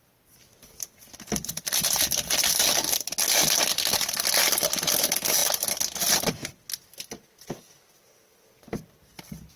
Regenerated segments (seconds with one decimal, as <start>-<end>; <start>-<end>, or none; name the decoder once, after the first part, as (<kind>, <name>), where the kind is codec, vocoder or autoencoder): none

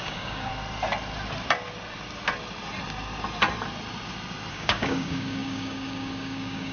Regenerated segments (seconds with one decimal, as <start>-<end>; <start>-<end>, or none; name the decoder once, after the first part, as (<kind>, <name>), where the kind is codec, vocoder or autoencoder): 0.0-0.5 (codec, DAC); 4.5-6.7

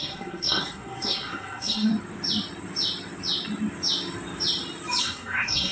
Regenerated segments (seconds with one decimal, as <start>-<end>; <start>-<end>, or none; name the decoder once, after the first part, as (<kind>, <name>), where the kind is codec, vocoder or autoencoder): 0.0-1.9 (codec, SNAC); 5.0-5.7